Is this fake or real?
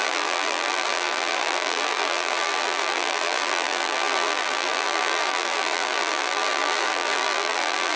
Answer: fake